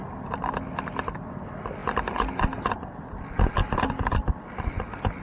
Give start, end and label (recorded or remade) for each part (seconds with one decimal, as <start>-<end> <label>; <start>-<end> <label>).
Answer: 0.0-5.2 recorded